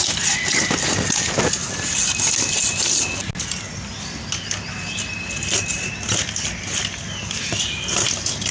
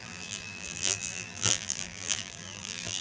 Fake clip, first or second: second